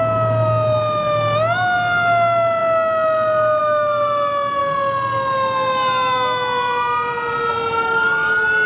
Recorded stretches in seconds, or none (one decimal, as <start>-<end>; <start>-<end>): 0.0-8.7